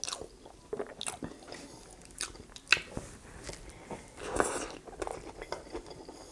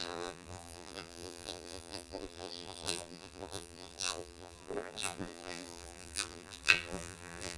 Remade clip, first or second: second